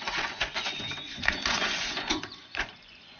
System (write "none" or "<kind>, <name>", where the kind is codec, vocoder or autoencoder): vocoder, Vocos